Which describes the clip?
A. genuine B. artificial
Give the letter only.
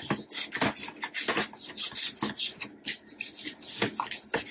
A